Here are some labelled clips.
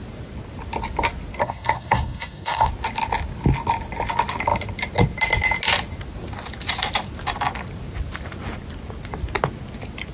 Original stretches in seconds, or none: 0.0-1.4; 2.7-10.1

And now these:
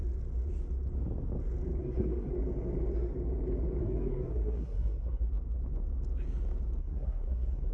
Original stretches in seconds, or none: 0.0-1.8; 2.3-3.8; 5.3-6.8

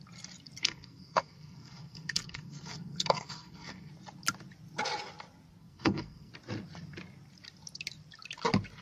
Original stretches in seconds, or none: 0.0-0.6; 3.9-5.6; 6.3-8.8

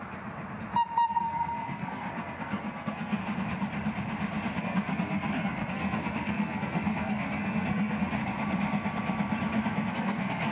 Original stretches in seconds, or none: 0.0-1.1; 3.2-4.6; 8.2-9.9